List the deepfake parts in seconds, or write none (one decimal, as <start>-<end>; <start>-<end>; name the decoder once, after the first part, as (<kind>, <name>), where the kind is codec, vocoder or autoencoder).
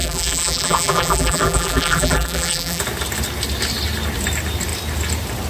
0.0-2.8 (vocoder, BigVGAN v2)